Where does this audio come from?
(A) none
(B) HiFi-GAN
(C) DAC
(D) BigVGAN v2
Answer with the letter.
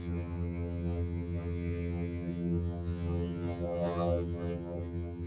B